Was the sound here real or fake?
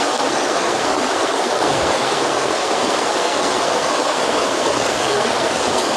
fake